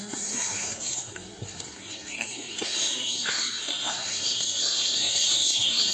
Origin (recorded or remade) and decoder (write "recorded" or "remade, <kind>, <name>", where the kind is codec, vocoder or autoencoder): remade, codec, SNAC